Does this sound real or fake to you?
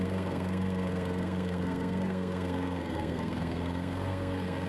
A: fake